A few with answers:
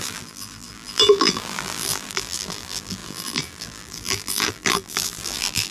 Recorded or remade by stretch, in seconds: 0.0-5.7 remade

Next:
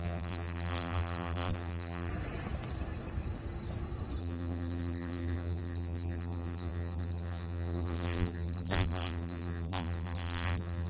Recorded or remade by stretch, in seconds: 0.0-2.1 remade; 2.1-4.2 recorded; 4.2-10.9 remade

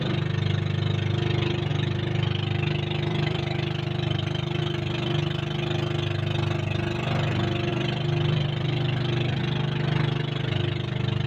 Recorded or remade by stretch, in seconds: 0.0-1.7 recorded; 1.7-4.6 remade; 4.6-7.7 recorded; 7.7-9.4 remade; 9.4-11.3 recorded

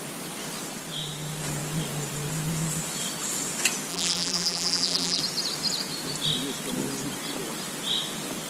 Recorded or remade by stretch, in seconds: 0.0-3.9 recorded; 3.9-5.2 remade; 5.2-8.5 recorded

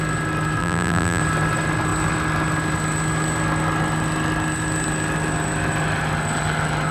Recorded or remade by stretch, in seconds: 0.0-0.6 recorded; 0.6-1.2 remade; 1.2-6.9 recorded